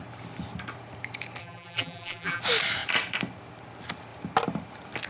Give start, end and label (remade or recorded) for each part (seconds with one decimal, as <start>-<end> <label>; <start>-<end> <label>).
0.0-1.4 recorded; 1.4-2.4 remade; 2.4-5.1 recorded